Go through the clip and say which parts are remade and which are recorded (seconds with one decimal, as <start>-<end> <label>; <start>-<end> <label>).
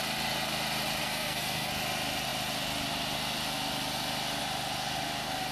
0.0-1.0 recorded; 1.0-1.7 remade; 1.7-5.5 recorded